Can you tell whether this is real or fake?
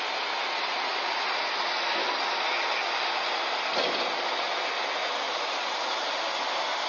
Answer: real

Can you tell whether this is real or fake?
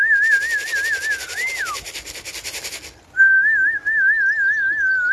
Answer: real